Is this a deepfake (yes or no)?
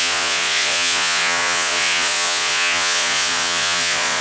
yes